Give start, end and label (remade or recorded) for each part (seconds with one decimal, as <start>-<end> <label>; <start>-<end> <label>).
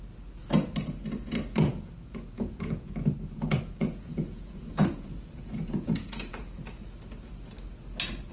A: 0.0-1.7 recorded; 1.7-6.4 remade; 6.4-8.3 recorded